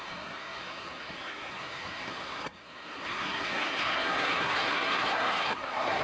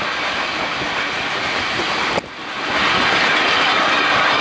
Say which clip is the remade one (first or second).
first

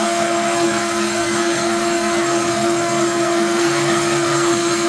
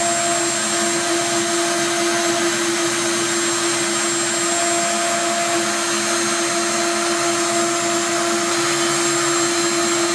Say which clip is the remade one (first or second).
first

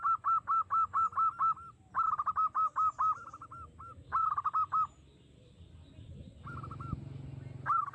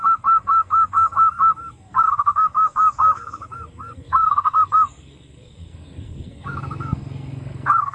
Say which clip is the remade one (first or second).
second